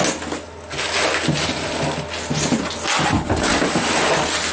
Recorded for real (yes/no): yes